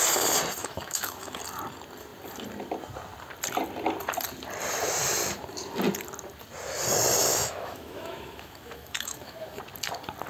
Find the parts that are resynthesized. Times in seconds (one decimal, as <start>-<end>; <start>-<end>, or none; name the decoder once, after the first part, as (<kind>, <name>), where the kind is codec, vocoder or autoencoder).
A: 0.6-1.4 (autoencoder, DAC-VAE); 7.3-9.6